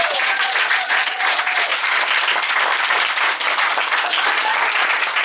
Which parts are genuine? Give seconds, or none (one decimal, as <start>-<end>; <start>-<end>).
1.7-4.8